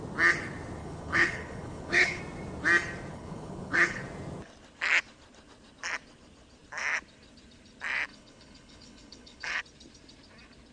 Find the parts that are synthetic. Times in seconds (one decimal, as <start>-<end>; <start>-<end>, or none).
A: 0.8-2.2; 3.1-4.0; 8.1-9.6